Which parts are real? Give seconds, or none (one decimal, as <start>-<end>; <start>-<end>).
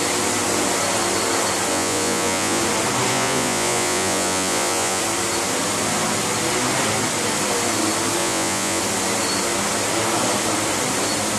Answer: 0.0-1.7; 2.6-3.1; 5.0-8.2; 8.8-11.4